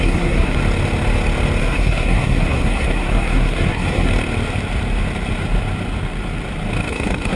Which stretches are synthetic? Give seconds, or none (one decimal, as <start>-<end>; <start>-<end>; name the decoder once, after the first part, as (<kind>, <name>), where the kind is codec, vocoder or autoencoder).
0.0-0.6 (codec, SNAC); 1.6-4.1; 6.9-7.4